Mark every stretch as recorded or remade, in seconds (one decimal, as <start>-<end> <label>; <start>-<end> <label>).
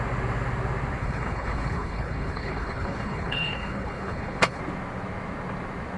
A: 0.0-1.0 recorded; 1.0-4.6 remade; 4.6-6.0 recorded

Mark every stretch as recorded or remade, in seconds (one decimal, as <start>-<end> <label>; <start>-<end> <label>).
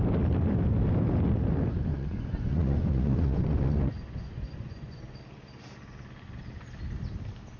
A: 0.0-1.9 recorded; 1.9-5.0 remade; 5.0-7.6 recorded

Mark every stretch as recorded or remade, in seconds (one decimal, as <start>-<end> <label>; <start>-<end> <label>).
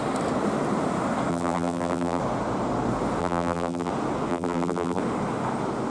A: 0.0-1.3 recorded; 1.3-2.2 remade; 2.2-3.2 recorded; 3.2-3.9 remade; 3.9-4.3 recorded; 4.3-5.0 remade; 5.0-5.9 recorded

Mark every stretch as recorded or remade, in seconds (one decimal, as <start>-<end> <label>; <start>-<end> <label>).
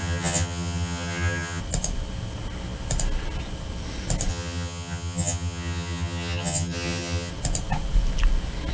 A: 0.0-1.6 remade; 1.6-4.3 recorded; 4.3-7.3 remade; 7.3-8.7 recorded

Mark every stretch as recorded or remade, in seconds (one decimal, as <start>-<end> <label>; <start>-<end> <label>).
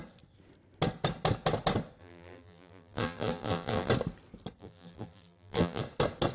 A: 0.0-2.0 recorded; 2.0-3.9 remade; 3.9-4.6 recorded; 4.6-5.8 remade; 5.8-6.3 recorded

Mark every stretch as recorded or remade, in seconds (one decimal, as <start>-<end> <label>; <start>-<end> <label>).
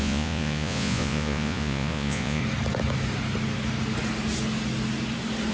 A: 0.0-2.4 remade; 2.4-5.5 recorded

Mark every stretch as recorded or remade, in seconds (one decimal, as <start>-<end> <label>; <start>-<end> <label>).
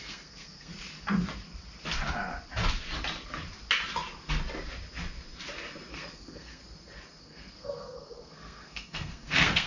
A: 0.0-0.7 remade; 0.7-5.9 recorded; 5.9-6.6 remade; 6.6-7.2 recorded; 7.2-9.7 remade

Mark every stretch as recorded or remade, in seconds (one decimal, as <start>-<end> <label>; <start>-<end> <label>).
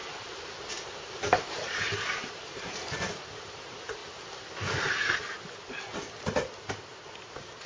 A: 0.0-4.0 remade; 4.0-7.3 recorded; 7.3-7.7 remade